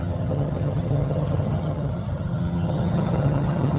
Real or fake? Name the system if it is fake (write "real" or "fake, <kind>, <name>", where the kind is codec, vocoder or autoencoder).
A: fake, vocoder, HiFi-GAN